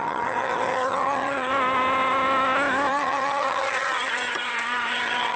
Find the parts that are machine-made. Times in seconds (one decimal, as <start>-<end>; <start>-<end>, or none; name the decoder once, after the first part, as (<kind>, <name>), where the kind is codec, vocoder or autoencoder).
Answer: 0.0-1.5 (vocoder, HiFi-GAN); 2.9-5.4